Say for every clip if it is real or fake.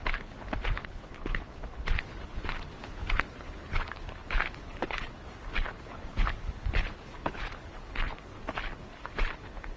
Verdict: fake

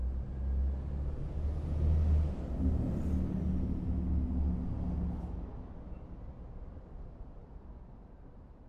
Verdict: real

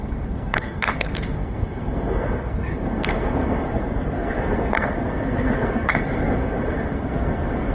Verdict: fake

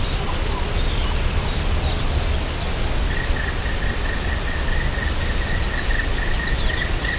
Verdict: real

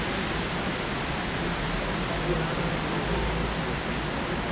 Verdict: real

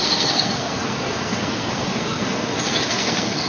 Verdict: fake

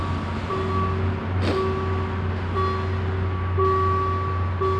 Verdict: real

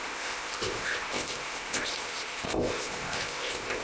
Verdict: fake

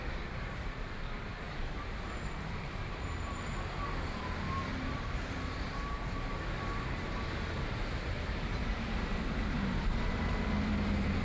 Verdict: fake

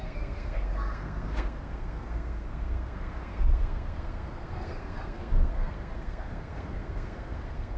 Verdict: fake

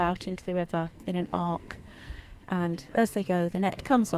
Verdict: fake